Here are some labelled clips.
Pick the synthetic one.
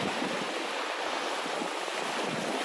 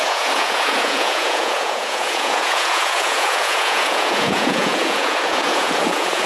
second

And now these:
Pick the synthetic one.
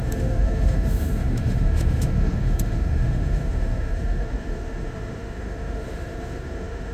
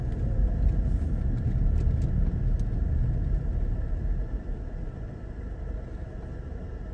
first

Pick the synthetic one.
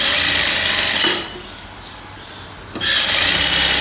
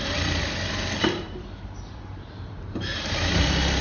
second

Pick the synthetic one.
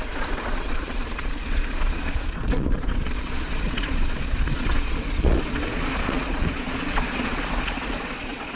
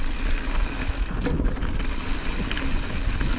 first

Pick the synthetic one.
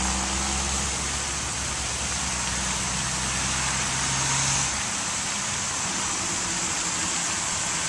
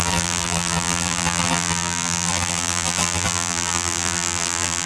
second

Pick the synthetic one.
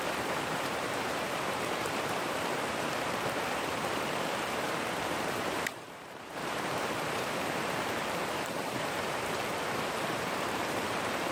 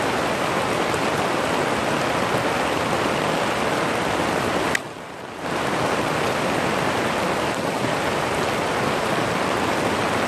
first